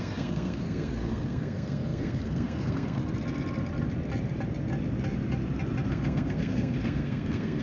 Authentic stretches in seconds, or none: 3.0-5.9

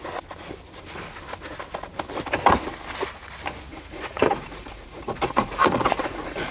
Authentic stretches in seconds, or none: 0.0-3.7

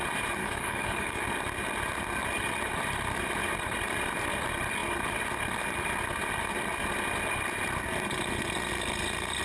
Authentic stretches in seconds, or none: 0.0-0.4; 1.2-9.4

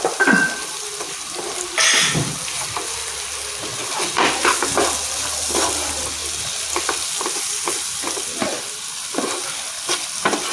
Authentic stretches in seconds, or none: 0.0-10.5

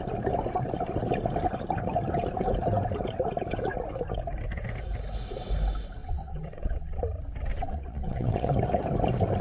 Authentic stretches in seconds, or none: 0.0-6.0; 7.0-7.5; 8.5-9.4

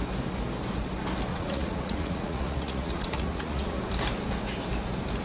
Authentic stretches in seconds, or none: 0.0-1.3; 3.8-5.2